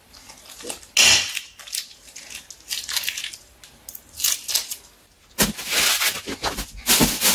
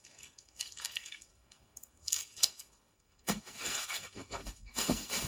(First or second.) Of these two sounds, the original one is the first